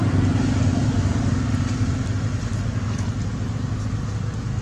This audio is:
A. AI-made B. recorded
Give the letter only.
B